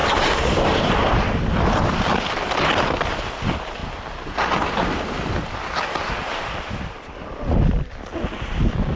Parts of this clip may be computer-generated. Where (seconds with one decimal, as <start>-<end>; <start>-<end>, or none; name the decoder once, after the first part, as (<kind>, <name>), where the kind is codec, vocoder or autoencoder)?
0.0-1.3 (vocoder, BigVGAN v2)